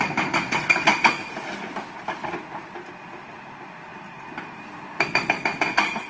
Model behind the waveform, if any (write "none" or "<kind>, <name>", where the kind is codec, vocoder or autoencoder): none